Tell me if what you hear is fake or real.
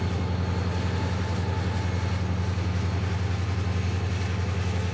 real